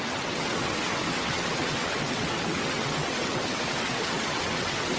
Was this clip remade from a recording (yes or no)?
yes